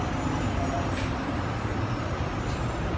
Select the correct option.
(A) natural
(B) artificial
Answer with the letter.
B